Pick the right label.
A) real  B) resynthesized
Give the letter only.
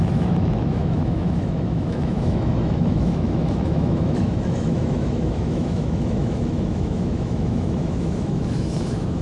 B